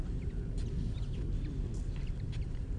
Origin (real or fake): real